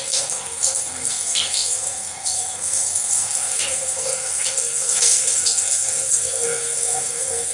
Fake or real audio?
fake